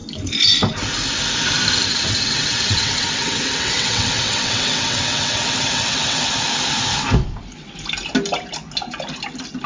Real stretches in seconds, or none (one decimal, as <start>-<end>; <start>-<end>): 0.0-1.9; 6.3-9.7